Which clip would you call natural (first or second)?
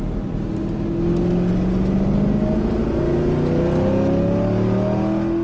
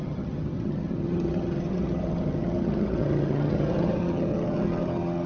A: first